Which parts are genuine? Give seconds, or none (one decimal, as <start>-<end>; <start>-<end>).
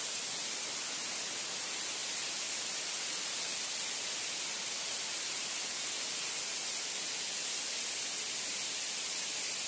0.0-9.7